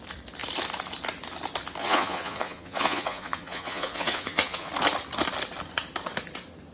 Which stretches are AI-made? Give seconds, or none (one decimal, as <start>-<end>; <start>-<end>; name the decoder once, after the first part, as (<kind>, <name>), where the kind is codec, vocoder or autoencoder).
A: 1.8-4.7 (vocoder, Vocos)